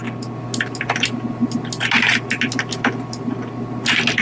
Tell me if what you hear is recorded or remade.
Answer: recorded